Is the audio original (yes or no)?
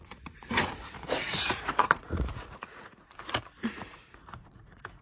no